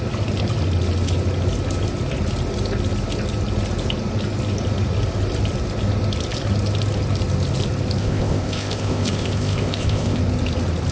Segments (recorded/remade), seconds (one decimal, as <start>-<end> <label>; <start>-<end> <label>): 0.0-8.0 recorded; 8.0-10.2 remade; 10.2-10.9 recorded